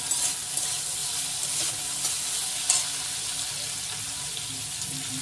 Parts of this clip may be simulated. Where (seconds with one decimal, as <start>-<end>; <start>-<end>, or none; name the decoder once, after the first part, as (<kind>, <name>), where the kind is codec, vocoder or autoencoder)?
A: none